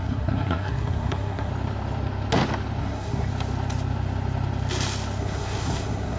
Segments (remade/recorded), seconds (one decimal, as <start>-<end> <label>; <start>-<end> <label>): 0.0-1.5 remade; 1.5-2.8 recorded; 2.8-3.3 remade; 3.3-5.2 recorded; 5.2-6.2 remade